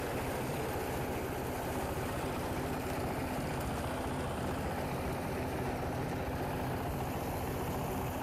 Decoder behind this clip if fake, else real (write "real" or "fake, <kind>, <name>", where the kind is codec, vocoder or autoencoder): real